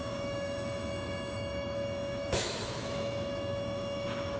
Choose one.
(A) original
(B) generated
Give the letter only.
B